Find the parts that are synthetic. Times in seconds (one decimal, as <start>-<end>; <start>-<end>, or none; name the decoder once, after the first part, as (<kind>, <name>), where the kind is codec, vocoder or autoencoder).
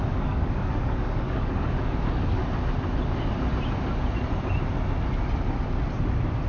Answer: 0.0-2.4 (codec, DAC)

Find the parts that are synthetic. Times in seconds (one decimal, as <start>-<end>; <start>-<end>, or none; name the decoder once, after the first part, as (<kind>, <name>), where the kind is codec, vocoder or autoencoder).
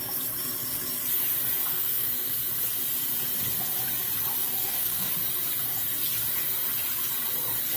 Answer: 1.7-2.3 (codec, SNAC); 4.4-5.1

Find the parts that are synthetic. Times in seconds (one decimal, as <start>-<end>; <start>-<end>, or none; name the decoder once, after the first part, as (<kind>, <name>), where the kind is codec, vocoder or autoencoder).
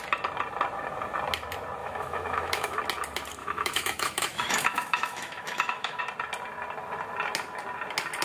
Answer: 1.8-2.8 (autoencoder, DAC-VAE); 3.4-6.0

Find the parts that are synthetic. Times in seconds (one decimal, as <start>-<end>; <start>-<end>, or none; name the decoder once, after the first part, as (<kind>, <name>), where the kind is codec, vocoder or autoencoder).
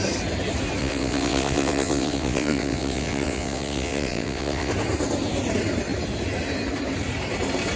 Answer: 0.8-4.7 (vocoder, WaveNeXt)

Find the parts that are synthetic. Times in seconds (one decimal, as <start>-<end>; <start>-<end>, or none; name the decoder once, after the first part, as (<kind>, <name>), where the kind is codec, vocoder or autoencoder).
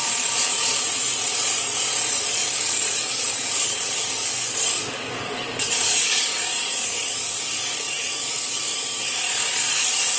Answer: 2.2-10.2 (codec, DAC)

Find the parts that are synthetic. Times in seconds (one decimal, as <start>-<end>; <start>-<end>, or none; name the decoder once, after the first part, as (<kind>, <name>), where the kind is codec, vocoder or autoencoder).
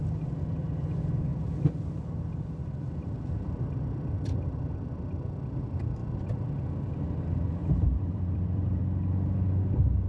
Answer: 1.3-4.7 (vocoder, BigVGAN v2); 6.0-6.5; 7.6-8.8